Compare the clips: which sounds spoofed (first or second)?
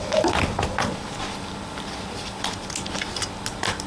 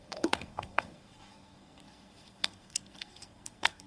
second